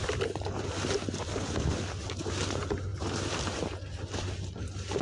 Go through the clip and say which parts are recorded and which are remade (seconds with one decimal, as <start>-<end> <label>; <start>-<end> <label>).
0.0-5.0 recorded